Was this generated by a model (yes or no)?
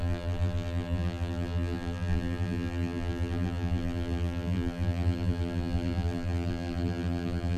yes